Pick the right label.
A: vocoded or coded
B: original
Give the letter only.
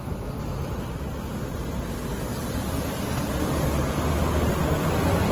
B